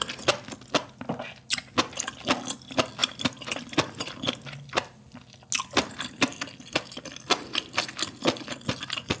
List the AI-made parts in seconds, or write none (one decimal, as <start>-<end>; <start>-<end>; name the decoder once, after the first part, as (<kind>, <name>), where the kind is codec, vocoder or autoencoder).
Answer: none